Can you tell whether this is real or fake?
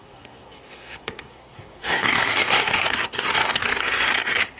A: fake